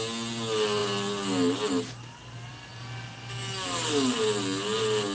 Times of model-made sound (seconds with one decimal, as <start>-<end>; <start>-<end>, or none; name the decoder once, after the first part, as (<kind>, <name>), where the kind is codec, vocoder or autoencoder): none